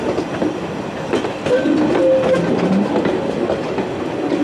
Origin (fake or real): real